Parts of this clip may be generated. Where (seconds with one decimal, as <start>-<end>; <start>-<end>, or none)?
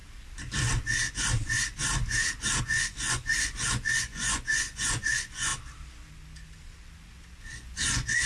2.6-5.5; 7.4-8.3